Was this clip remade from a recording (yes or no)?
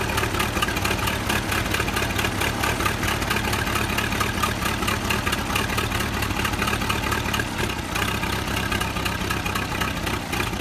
no